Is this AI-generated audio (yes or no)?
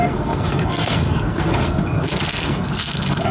yes